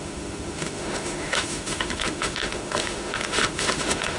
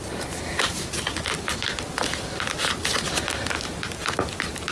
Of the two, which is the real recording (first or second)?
second